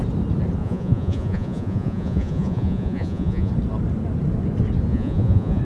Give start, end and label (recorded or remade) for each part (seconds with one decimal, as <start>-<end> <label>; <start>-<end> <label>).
0.0-0.6 recorded; 0.6-3.5 remade; 3.5-4.9 recorded; 4.9-5.6 remade